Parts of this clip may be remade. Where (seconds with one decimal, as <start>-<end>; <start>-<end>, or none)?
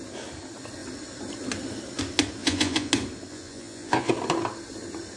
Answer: 2.4-2.9; 3.3-4.1